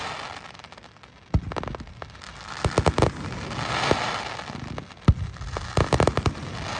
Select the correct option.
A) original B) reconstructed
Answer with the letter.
A